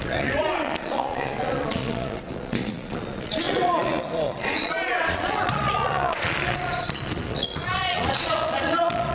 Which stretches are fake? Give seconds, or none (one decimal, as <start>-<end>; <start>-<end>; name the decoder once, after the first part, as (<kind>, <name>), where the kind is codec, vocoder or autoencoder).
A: 0.0-9.1 (vocoder, Vocos)